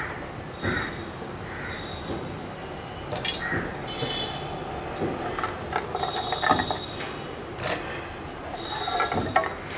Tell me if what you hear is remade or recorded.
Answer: recorded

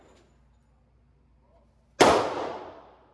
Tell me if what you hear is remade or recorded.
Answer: recorded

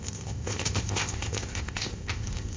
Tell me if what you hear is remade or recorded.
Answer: remade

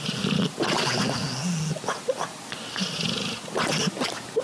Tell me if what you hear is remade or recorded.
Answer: recorded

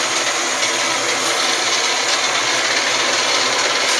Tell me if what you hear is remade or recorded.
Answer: recorded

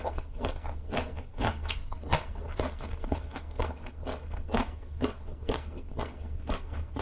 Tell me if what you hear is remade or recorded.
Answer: remade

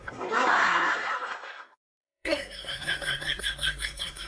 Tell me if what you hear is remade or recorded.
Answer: remade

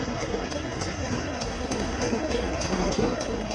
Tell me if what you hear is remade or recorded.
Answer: remade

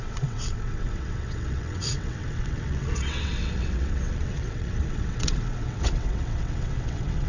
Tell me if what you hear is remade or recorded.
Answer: remade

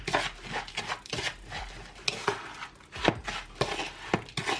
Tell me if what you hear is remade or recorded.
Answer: recorded